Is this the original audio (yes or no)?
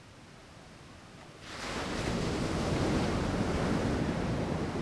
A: yes